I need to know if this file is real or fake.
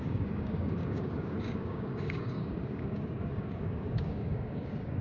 fake